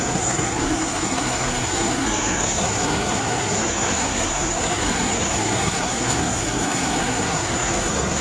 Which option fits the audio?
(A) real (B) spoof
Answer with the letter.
B